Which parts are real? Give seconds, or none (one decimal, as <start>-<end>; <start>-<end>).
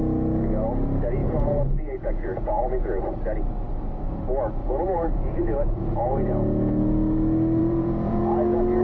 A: 0.0-1.2; 3.0-4.6; 6.7-7.6; 8.2-8.8